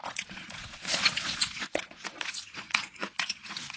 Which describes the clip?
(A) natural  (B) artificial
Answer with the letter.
B